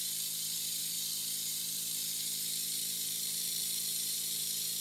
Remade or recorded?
remade